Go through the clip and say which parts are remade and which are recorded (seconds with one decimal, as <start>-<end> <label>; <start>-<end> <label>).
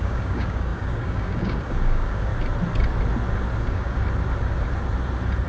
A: 0.0-2.3 remade; 2.3-3.6 recorded; 3.6-4.0 remade; 4.0-5.5 recorded